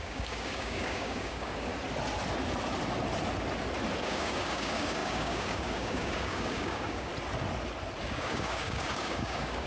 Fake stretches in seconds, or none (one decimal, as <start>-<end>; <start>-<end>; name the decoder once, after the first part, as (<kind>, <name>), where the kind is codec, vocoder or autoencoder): 0.0-1.7 (codec, DAC); 4.0-7.1; 8.0-9.7